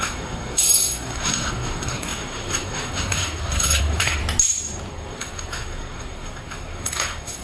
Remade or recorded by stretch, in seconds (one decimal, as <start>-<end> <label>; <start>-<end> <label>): 0.0-4.2 remade; 4.2-4.9 recorded; 4.9-7.4 remade